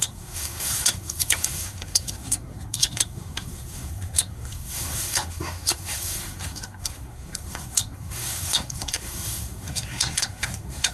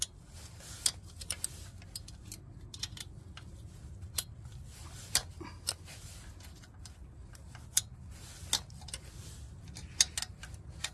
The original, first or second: second